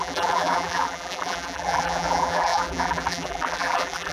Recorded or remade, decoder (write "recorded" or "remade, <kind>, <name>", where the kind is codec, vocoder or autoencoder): remade, vocoder, BigVGAN v2